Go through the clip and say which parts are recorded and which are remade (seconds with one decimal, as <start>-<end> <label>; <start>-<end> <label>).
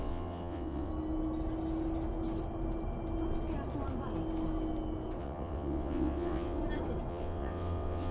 0.0-0.9 remade; 0.9-5.2 recorded; 5.2-6.6 remade; 6.6-7.1 recorded; 7.1-8.1 remade